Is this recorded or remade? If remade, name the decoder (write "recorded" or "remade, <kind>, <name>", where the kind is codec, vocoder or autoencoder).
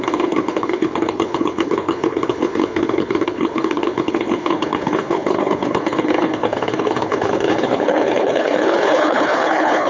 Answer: remade, codec, HILCodec